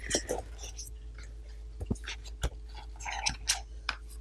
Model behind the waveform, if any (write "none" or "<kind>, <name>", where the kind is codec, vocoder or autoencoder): none